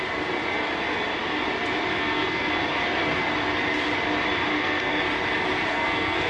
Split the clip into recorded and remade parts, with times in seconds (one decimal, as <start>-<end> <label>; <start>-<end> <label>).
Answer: 0.0-1.9 recorded; 1.9-2.5 remade; 2.5-4.5 recorded; 4.5-5.0 remade; 5.0-5.7 recorded; 5.7-6.3 remade